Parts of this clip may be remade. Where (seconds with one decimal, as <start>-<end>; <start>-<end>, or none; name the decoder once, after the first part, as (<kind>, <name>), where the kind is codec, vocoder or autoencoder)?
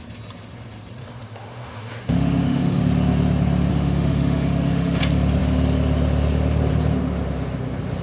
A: 1.0-2.8 (autoencoder, DAC-VAE); 3.7-5.0